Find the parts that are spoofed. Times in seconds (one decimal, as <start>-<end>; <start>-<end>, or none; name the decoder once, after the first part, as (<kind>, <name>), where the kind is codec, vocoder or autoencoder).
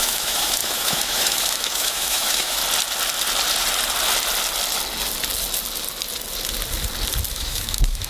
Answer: 0.0-2.6 (autoencoder, DAC-VAE); 7.3-8.1